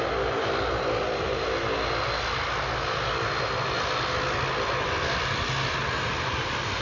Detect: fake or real real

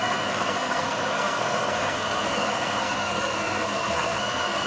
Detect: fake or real fake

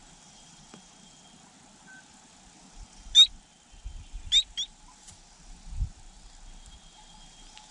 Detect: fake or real real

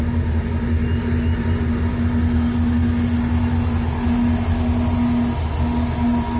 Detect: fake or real real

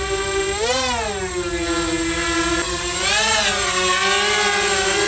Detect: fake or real real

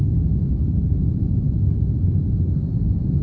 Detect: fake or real real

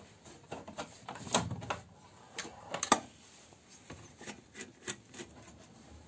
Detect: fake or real real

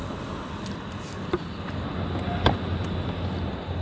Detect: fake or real real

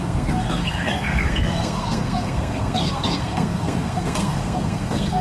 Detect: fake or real fake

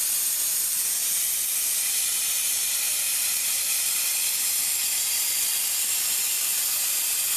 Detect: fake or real real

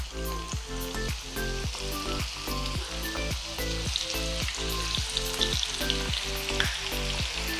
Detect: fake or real real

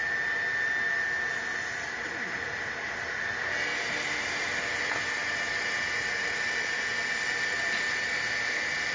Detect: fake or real real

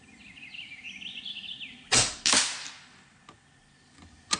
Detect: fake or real real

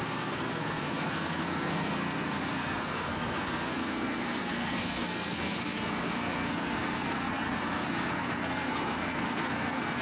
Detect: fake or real fake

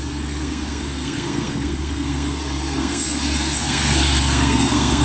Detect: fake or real fake